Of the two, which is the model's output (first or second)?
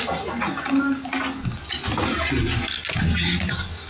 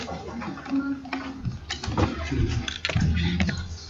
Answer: second